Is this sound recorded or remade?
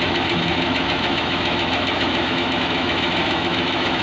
remade